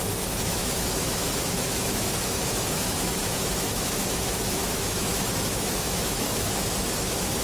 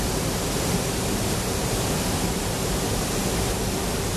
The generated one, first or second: first